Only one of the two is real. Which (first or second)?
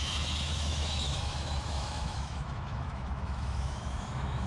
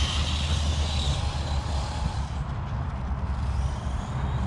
second